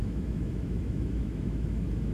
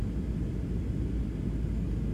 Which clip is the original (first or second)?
second